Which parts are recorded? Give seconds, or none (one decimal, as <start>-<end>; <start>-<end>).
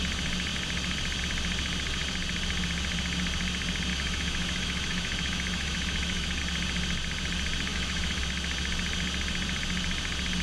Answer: 0.0-3.9; 6.4-7.7; 8.2-10.4